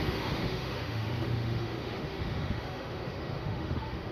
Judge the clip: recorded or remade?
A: remade